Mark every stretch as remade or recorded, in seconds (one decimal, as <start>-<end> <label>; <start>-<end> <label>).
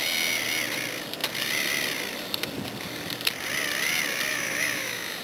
0.0-4.3 recorded; 4.3-5.2 remade